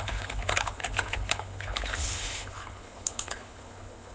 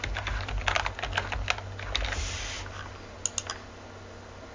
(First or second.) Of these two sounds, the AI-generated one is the first